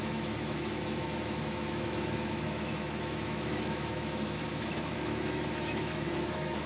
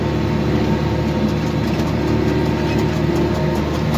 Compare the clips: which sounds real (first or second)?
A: second